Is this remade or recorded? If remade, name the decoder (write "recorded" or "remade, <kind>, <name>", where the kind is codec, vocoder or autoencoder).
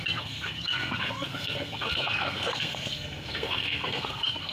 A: remade, codec, SNAC